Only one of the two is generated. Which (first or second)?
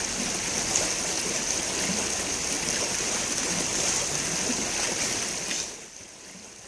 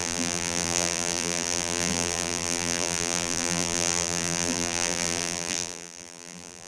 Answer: second